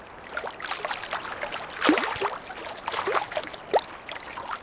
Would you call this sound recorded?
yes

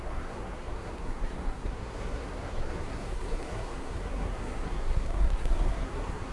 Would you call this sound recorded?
no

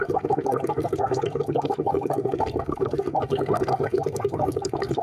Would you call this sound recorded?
no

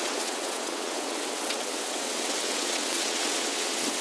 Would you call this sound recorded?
no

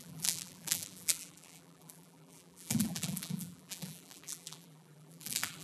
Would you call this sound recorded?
no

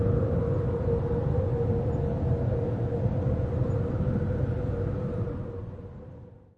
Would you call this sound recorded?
yes